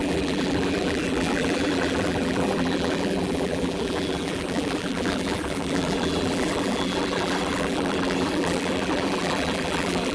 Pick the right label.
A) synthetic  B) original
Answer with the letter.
A